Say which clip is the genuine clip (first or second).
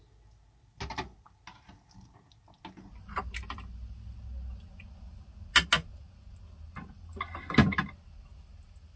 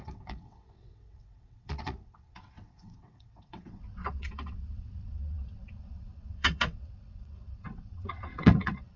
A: first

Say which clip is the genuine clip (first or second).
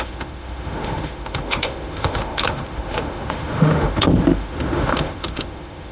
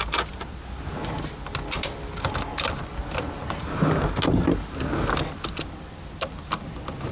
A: second